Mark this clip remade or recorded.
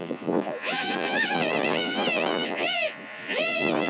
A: remade